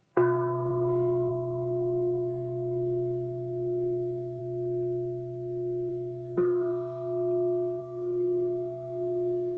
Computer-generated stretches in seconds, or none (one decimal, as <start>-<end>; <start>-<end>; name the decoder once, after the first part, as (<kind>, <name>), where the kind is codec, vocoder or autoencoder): 0.0-4.4 (codec, SNAC); 5.9-6.7; 7.8-9.6